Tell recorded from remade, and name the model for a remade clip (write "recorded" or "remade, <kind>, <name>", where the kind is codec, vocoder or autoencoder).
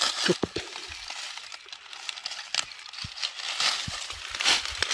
recorded